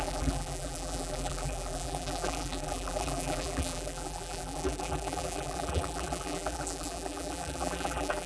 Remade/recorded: remade